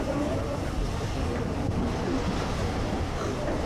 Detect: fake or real real